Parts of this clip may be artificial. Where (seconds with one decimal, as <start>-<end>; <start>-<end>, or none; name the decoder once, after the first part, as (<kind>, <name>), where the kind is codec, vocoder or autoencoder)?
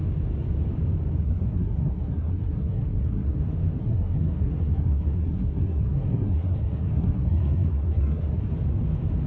1.2-3.4 (codec, SNAC); 3.8-8.5